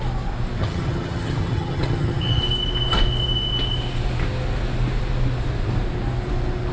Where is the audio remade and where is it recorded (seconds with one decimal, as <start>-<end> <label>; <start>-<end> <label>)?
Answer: 0.0-0.6 recorded; 0.6-2.4 remade; 2.4-6.7 recorded